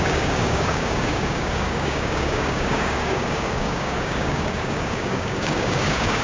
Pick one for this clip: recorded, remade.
remade